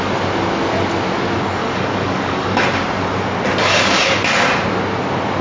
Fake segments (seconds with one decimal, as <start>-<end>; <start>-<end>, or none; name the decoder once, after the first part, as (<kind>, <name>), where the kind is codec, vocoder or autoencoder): 1.6-2.6 (codec, DAC)